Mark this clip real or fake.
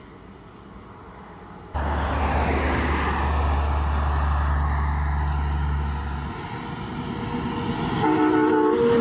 real